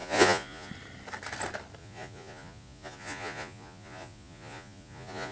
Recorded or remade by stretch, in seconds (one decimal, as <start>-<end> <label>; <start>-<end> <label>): 0.0-0.7 remade; 0.7-1.8 recorded; 1.8-5.3 remade